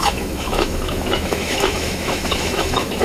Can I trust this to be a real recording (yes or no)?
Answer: no